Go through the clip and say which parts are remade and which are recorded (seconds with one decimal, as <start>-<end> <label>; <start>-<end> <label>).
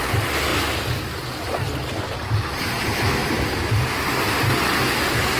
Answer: 0.0-5.4 recorded